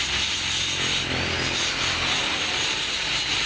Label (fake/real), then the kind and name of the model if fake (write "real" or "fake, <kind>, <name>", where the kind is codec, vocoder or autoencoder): real